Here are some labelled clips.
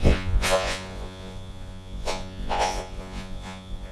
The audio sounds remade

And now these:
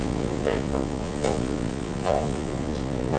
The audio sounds remade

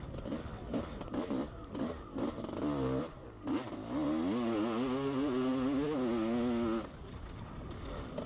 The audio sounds recorded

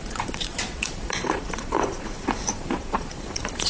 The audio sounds remade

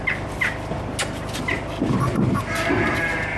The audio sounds recorded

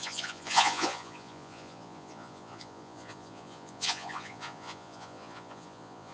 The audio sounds remade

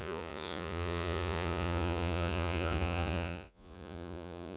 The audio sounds remade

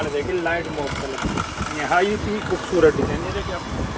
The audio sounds recorded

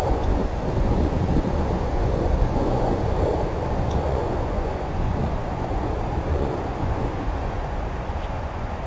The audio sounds remade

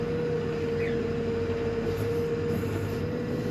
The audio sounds recorded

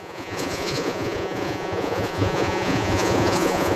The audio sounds remade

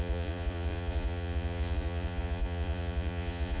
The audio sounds remade